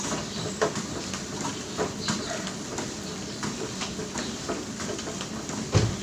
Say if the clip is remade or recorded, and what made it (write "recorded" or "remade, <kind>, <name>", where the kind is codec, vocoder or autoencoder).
recorded